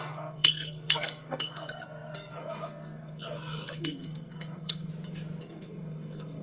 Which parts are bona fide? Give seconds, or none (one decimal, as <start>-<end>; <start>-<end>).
4.9-5.4